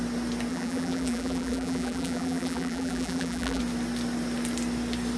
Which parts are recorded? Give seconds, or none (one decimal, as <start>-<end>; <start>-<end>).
0.0-0.5; 3.6-5.2